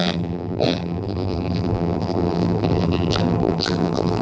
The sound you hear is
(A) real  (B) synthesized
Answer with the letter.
B